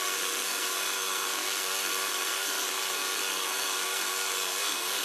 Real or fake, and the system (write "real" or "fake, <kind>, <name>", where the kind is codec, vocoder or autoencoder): fake, codec, SNAC